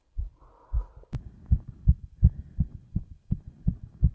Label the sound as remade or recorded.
recorded